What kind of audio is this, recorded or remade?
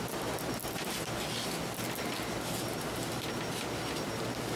recorded